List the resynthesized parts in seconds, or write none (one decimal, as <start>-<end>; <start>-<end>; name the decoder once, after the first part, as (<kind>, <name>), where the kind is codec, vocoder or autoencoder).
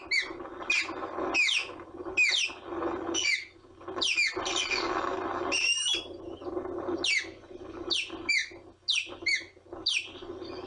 none